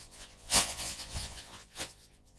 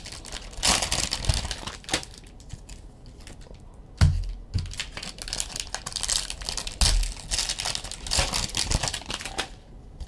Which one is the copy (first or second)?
first